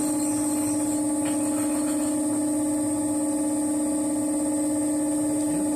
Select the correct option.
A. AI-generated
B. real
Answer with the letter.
B